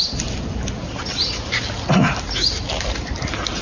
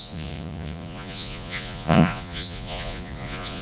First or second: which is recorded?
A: first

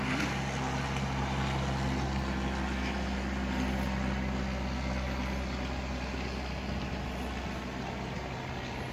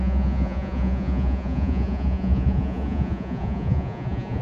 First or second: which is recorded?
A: first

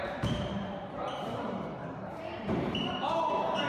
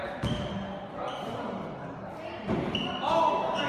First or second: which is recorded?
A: second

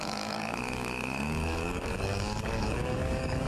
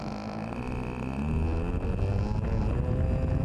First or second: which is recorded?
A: second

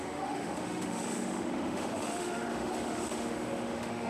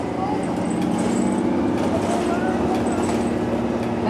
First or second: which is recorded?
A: second